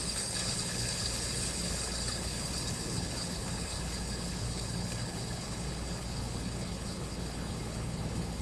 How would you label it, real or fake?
fake